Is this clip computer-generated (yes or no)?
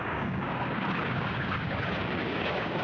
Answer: yes